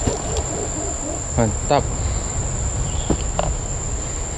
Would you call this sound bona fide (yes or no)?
yes